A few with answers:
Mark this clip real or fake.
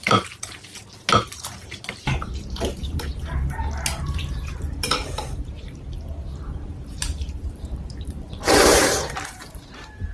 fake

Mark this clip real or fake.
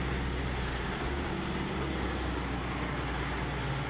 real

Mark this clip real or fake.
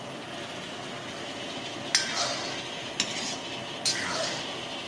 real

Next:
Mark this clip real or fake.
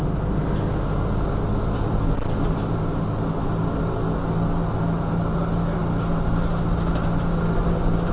real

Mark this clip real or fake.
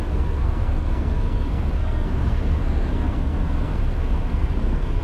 fake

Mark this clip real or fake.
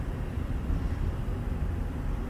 fake